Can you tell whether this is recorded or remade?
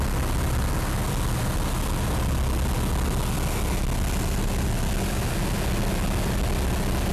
recorded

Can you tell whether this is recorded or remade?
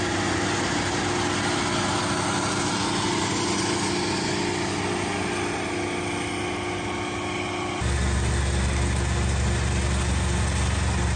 recorded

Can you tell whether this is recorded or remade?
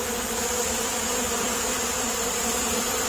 remade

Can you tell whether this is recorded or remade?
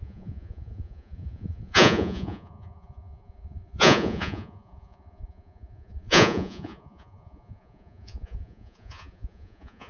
remade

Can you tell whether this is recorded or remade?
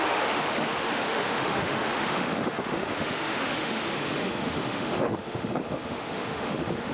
remade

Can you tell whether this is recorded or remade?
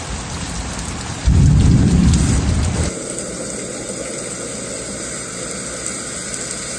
recorded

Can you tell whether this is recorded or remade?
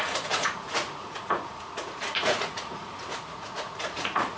remade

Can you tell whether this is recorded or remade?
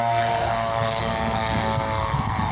remade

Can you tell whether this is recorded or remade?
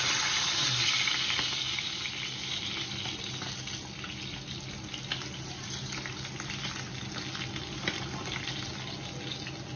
recorded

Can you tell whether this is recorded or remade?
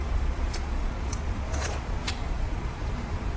remade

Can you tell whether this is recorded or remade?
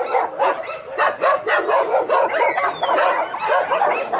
recorded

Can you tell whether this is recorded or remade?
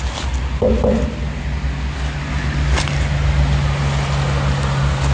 recorded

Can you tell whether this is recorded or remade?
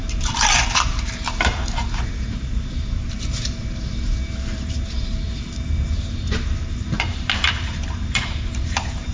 remade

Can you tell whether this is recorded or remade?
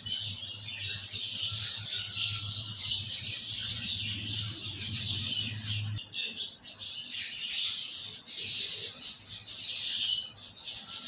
recorded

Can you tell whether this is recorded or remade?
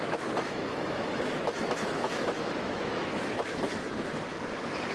remade